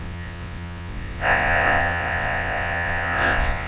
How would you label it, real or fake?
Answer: fake